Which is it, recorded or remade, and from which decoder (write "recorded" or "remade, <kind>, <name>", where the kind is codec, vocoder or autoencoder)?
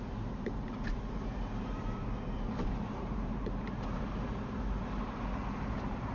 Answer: remade, vocoder, BigVGAN v2